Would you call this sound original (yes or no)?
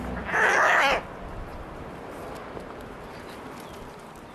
yes